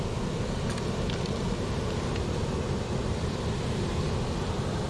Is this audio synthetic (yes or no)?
no